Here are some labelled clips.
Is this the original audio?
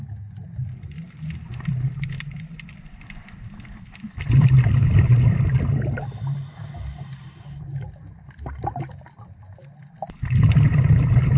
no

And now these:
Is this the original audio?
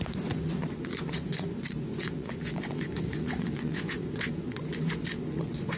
no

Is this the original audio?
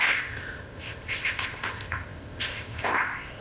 no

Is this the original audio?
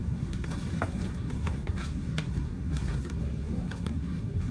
no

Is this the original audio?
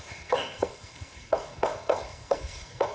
no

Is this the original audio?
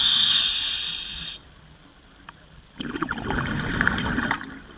yes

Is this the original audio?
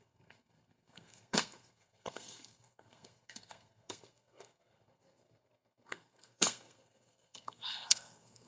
no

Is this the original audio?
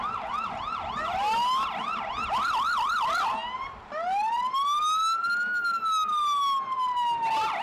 yes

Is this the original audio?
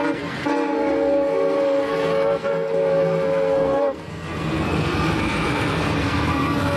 no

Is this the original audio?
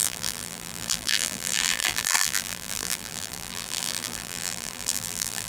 no